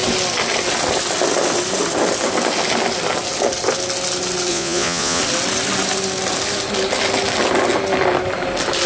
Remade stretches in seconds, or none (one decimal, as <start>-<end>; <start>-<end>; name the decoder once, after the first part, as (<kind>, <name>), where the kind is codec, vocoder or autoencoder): 4.5-5.2 (vocoder, Vocos)